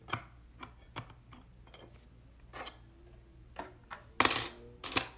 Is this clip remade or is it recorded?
recorded